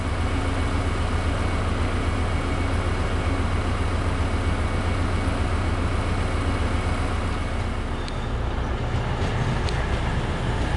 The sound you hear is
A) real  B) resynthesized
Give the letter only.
A